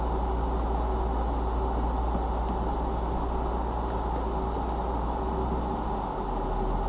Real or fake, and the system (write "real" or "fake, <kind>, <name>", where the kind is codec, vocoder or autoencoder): real